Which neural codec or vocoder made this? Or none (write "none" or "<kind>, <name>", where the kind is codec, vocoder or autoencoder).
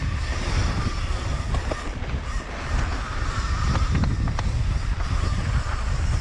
none